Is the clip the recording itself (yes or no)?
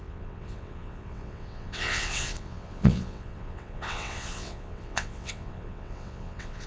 no